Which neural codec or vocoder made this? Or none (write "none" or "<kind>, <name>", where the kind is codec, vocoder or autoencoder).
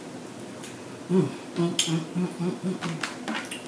none